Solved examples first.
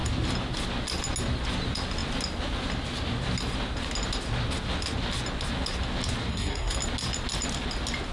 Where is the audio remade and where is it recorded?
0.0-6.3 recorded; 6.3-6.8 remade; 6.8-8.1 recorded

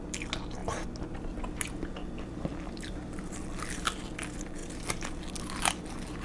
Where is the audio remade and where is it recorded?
0.0-6.2 recorded

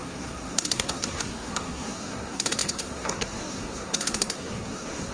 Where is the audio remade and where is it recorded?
0.0-5.1 remade

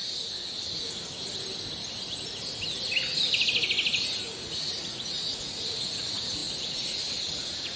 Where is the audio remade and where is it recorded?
0.0-4.4 recorded; 4.4-7.8 remade

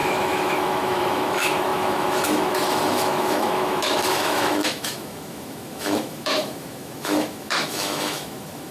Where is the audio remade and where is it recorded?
0.0-8.7 remade

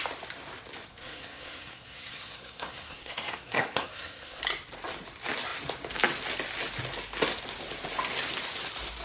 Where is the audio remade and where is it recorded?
0.0-0.9 recorded; 0.9-4.4 remade; 4.4-9.0 recorded

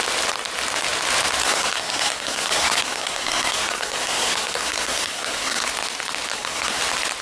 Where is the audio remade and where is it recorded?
0.0-1.4 recorded; 1.4-5.7 remade; 5.7-6.3 recorded; 6.3-6.8 remade; 6.8-7.2 recorded

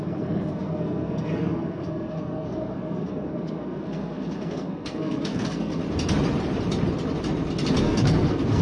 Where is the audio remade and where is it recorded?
0.0-5.8 remade; 5.8-7.8 recorded; 7.8-8.6 remade